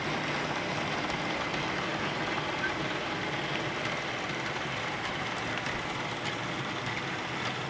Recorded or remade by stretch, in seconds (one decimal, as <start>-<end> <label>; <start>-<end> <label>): 0.0-7.7 recorded

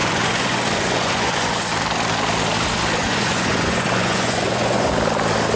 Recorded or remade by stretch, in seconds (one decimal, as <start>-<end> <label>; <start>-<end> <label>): 0.0-1.7 remade; 1.7-3.0 recorded; 3.0-4.9 remade; 4.9-5.6 recorded

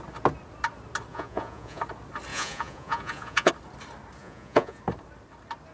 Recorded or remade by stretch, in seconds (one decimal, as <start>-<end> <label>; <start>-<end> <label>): 0.0-1.1 recorded; 1.1-1.8 remade; 1.8-2.3 recorded; 2.3-3.5 remade; 3.5-4.2 recorded; 4.2-4.8 remade; 4.8-5.7 recorded

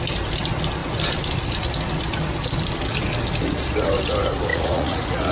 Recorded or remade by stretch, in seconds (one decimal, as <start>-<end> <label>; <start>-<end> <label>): 0.0-4.5 recorded; 4.5-5.3 remade